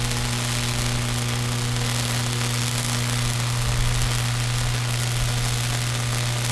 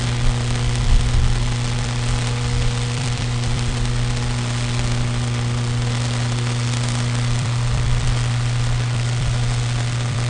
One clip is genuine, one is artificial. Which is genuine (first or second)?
first